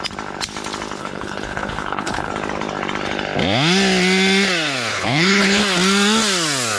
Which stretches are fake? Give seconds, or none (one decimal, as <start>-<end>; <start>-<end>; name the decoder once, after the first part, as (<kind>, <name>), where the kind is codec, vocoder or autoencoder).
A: 1.0-2.3 (codec, HILCodec); 4.9-5.6